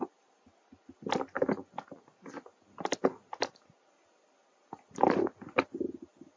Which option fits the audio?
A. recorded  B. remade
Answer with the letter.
A